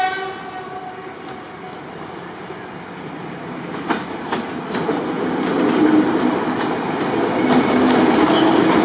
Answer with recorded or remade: recorded